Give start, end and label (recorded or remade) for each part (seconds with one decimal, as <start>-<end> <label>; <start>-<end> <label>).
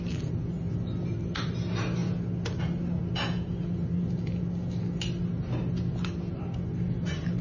0.0-7.4 recorded